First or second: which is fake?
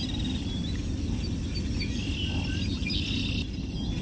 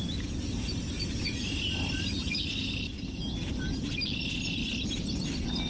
second